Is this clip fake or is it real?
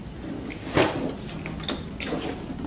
real